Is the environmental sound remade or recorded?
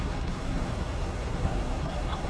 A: remade